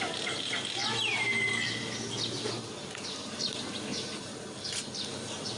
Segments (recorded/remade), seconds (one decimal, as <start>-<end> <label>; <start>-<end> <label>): 0.0-5.6 recorded